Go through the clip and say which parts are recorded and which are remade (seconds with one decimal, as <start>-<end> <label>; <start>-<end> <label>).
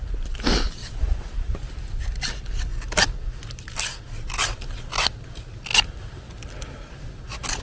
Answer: 0.0-0.8 recorded; 0.8-1.5 remade; 1.5-7.6 recorded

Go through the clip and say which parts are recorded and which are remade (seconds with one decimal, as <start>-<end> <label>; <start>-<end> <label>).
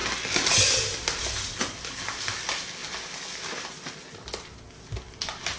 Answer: 0.0-5.6 recorded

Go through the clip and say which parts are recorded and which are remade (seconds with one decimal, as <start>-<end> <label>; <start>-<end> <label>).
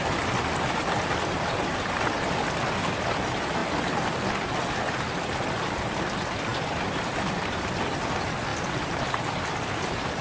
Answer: 0.0-10.2 recorded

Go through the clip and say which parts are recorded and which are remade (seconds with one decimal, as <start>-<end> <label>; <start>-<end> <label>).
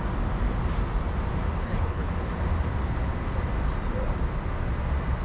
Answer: 0.0-1.6 recorded; 1.6-2.1 remade; 2.1-5.2 recorded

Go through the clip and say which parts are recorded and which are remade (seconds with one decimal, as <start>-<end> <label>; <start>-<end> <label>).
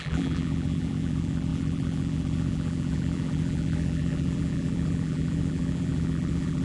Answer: 0.0-6.6 remade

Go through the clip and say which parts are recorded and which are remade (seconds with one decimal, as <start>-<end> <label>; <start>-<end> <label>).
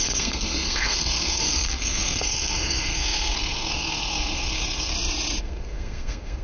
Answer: 0.0-4.9 remade; 4.9-5.4 recorded; 5.4-6.4 remade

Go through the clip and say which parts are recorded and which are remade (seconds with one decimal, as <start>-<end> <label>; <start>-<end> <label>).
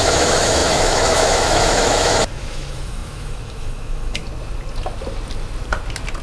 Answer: 0.0-4.2 remade; 4.2-6.2 recorded